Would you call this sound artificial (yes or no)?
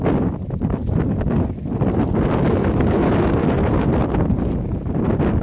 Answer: no